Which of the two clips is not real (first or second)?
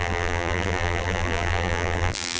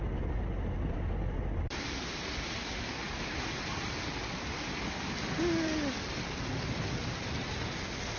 first